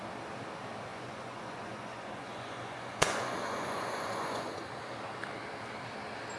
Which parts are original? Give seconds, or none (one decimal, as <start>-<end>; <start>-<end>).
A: 0.0-0.9; 4.6-6.4